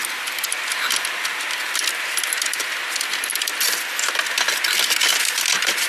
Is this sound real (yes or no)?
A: yes